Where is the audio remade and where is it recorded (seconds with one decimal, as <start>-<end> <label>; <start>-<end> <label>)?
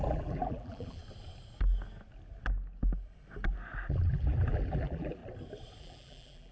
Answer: 0.0-1.0 remade; 1.0-3.9 recorded; 3.9-5.2 remade; 5.2-5.8 recorded; 5.8-6.5 remade